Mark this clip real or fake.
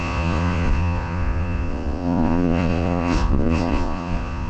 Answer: fake